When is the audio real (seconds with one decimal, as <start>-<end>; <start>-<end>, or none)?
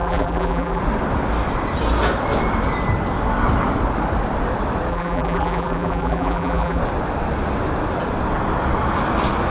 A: 0.8-4.9; 6.8-9.5